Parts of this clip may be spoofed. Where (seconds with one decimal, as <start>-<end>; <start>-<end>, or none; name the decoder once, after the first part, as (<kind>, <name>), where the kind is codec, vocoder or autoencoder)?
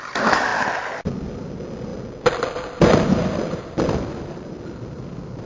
none